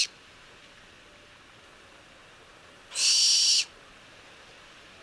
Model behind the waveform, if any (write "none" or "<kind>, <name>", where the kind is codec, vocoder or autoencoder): none